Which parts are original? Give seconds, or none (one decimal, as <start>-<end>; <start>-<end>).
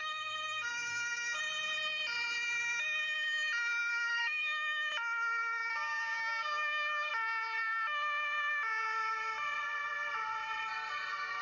1.4-3.9; 4.9-5.6; 7.1-11.4